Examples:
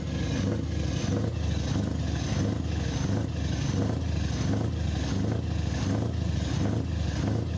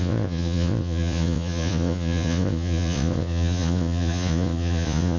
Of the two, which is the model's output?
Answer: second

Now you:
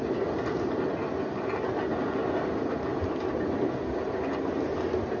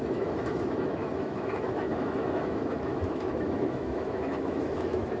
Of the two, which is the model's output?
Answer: second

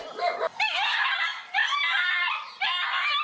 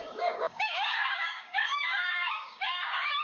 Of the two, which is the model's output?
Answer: second